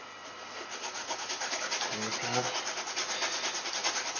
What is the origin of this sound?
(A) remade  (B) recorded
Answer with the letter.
B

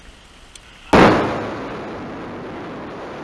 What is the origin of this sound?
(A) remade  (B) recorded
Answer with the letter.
B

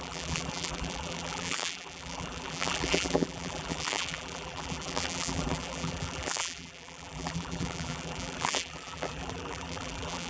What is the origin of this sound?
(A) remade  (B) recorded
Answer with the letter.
A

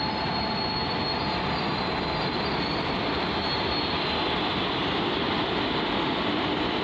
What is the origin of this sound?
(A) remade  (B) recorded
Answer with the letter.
B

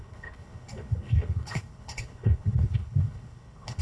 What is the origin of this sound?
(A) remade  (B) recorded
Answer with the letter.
A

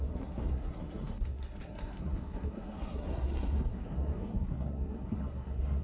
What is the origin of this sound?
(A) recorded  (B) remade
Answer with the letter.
B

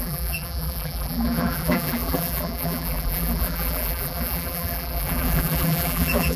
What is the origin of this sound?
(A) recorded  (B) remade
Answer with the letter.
B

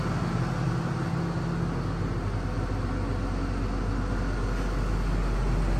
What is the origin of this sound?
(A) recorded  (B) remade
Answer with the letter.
A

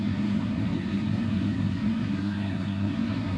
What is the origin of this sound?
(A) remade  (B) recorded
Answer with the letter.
A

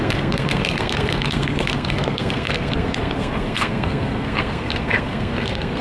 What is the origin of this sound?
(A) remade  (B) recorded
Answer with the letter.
A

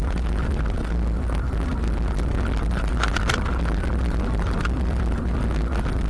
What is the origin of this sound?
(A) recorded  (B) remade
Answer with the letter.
A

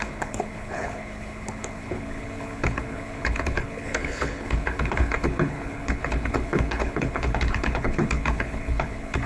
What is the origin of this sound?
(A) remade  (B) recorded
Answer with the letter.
A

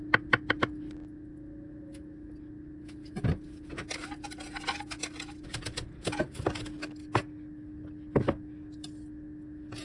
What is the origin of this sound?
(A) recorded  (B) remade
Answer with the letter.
A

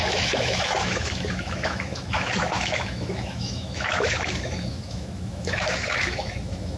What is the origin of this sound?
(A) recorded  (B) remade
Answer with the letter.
B